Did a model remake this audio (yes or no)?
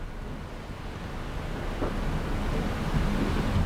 no